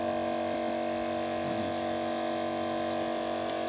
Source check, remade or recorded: recorded